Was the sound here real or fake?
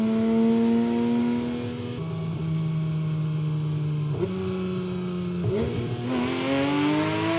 real